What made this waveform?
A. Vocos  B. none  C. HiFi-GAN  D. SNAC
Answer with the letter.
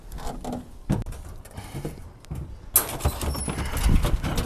B